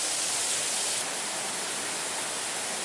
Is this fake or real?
real